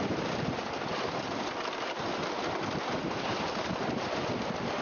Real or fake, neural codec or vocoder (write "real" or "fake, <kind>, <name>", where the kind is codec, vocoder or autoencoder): fake, vocoder, BigVGAN v2